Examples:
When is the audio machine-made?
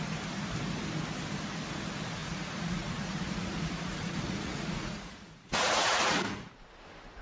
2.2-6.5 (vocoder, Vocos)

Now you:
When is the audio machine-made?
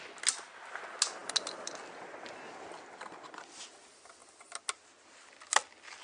none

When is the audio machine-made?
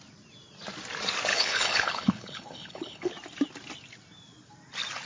1.3-3.1 (codec, HILCodec)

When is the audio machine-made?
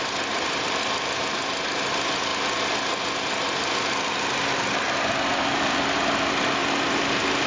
none